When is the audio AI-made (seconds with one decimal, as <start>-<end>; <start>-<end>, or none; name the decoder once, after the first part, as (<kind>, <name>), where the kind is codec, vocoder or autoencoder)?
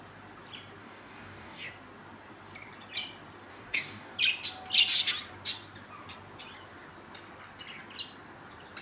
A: 0.8-1.7 (codec, DAC); 3.5-4.2